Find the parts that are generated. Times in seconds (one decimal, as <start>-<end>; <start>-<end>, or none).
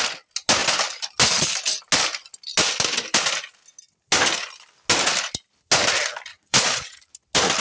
6.3-7.0